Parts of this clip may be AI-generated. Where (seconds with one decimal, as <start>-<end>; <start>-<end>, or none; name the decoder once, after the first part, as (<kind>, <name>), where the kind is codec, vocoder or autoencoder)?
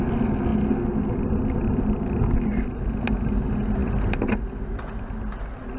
none